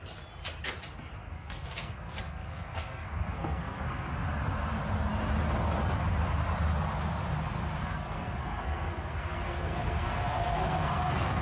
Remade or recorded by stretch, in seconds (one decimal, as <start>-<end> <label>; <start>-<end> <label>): 0.0-1.2 recorded; 1.2-4.1 remade; 4.1-7.8 recorded; 7.8-11.4 remade